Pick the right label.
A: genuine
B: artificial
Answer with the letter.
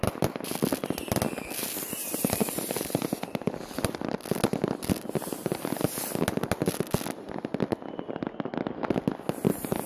A